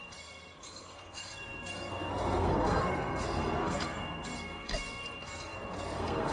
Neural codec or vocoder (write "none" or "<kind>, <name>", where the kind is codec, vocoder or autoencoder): codec, SNAC